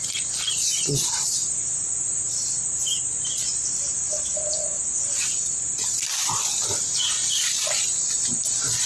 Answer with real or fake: real